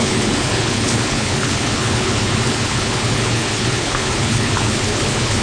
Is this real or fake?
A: fake